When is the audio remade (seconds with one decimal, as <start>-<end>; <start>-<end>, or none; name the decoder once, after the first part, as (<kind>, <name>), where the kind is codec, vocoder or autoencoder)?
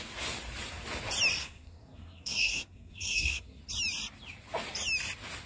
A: 1.4-3.6 (codec, SNAC)